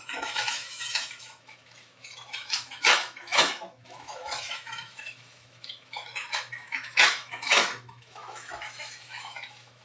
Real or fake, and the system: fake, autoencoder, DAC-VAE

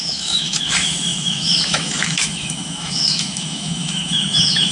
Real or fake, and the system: fake, autoencoder, DAC-VAE